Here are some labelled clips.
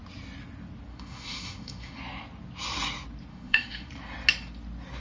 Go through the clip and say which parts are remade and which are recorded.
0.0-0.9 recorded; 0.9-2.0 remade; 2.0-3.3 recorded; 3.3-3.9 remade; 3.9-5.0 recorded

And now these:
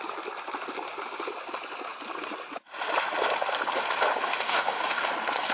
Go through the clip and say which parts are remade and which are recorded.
0.0-4.3 recorded; 4.3-5.0 remade; 5.0-5.5 recorded

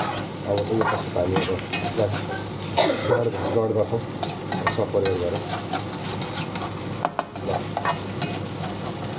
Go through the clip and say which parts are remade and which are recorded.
0.0-9.2 recorded

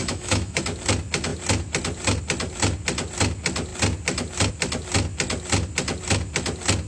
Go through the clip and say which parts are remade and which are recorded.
0.0-0.6 remade; 0.6-6.9 recorded